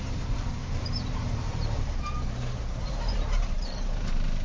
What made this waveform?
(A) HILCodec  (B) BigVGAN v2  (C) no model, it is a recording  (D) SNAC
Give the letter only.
B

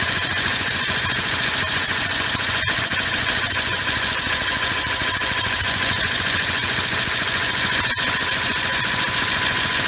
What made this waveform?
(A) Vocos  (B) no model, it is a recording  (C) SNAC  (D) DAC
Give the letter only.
A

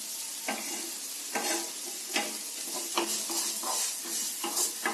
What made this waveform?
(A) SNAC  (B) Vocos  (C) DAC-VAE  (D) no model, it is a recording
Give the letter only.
D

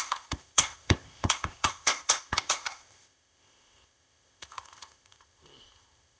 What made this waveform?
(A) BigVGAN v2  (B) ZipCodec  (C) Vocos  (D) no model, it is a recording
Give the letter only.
B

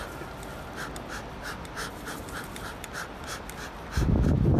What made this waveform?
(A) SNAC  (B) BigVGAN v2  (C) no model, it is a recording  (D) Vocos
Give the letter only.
C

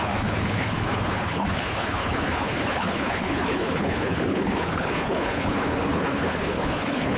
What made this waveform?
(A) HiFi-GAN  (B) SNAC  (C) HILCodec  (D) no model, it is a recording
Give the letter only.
C